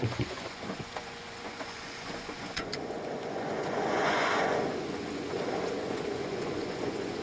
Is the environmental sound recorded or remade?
remade